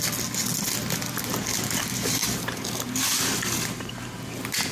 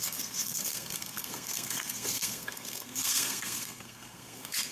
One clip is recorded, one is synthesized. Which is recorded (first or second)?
first